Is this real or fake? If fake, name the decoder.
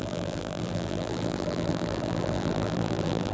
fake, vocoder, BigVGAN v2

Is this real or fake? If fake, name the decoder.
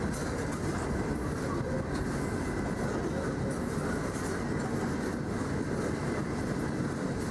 real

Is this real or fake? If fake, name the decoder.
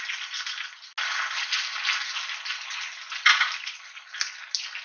real